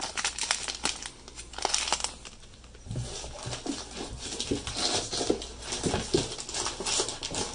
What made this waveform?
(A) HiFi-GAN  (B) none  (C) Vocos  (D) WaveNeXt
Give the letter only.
B